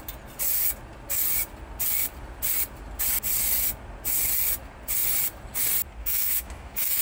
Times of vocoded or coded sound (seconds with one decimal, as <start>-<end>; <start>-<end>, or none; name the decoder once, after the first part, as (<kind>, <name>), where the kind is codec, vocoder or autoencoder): 6.0-7.0 (autoencoder, DAC-VAE)